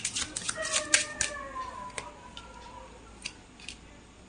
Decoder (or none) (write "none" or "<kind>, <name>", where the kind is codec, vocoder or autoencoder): none